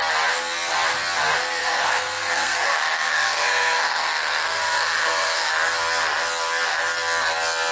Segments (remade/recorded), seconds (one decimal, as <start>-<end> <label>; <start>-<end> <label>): 0.0-1.6 recorded; 1.6-5.5 remade; 5.5-7.7 recorded